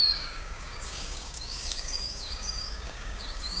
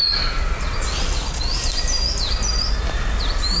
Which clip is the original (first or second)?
second